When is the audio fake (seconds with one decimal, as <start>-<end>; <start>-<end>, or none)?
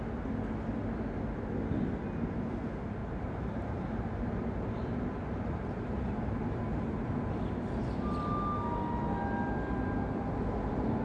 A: 3.0-6.6